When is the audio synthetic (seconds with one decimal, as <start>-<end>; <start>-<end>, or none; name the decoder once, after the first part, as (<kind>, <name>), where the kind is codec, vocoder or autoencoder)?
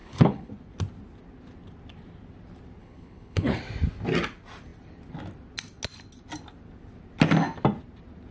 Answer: 0.0-0.5 (codec, HILCodec); 2.8-3.6